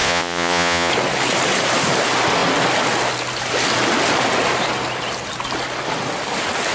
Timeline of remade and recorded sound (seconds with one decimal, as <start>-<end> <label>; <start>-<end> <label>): 0.0-0.9 remade; 0.9-6.7 recorded